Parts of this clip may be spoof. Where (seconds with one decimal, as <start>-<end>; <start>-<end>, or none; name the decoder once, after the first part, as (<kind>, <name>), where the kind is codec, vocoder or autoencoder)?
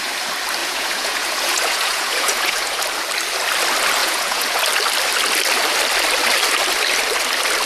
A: 0.6-2.8 (vocoder, Vocos); 4.0-4.6